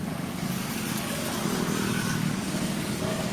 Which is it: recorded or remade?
remade